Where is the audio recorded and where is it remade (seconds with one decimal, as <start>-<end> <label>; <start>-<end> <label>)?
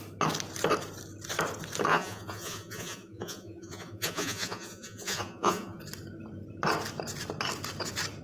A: 0.0-1.9 recorded; 1.9-5.8 remade; 5.8-8.2 recorded